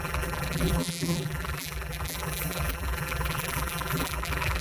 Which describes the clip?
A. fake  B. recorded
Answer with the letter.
A